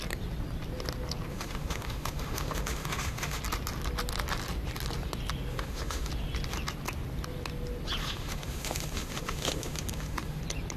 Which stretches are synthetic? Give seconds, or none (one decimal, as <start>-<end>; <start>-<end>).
1.3-3.4; 5.5-6.1; 8.0-10.4